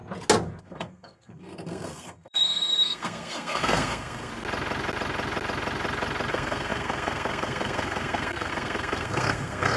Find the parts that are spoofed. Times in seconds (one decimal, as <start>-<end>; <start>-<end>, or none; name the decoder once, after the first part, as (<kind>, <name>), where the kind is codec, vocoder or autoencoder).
0.6-4.3 (codec, SNAC); 6.3-9.8

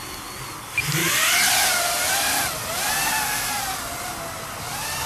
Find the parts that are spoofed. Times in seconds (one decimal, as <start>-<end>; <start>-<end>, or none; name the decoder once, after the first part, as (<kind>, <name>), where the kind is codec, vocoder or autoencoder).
none

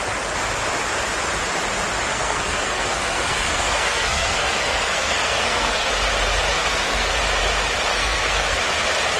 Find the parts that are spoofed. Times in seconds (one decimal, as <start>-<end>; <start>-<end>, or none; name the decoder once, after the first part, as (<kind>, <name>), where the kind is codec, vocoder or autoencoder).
2.1-5.9 (codec, SNAC); 6.5-7.2; 7.9-8.6

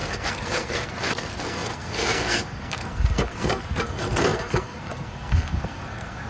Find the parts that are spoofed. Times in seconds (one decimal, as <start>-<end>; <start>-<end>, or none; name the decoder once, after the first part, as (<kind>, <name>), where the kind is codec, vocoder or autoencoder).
0.0-6.3 (codec, SNAC)

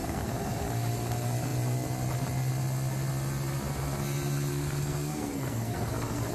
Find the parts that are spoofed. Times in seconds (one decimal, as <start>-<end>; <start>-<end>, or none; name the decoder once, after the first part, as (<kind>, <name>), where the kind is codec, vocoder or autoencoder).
0.0-0.6 (codec, SNAC); 4.5-6.3

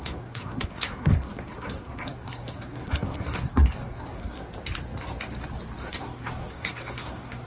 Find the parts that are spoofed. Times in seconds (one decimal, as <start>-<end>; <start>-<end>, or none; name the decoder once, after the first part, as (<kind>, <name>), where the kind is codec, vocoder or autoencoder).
0.0-4.5 (codec, SNAC); 5.8-7.5

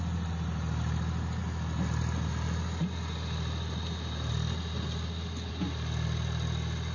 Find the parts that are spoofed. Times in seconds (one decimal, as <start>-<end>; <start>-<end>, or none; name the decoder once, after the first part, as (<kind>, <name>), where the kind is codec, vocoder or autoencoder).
none